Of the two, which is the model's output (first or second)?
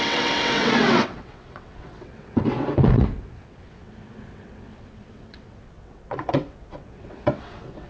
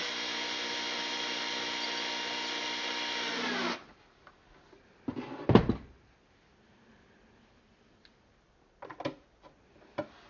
first